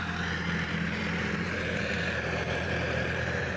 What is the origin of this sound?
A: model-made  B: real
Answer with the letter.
A